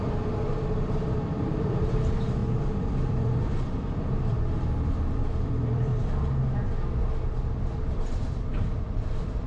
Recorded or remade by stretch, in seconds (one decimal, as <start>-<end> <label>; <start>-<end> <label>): 0.0-5.9 remade; 5.9-7.4 recorded; 7.4-9.5 remade